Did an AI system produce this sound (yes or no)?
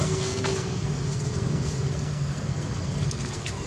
yes